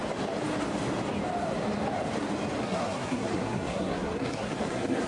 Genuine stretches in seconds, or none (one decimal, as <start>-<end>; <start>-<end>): 0.0-2.6